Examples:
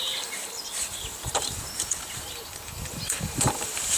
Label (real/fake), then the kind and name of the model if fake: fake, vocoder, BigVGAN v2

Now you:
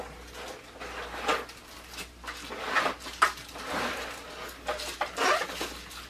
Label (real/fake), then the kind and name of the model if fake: real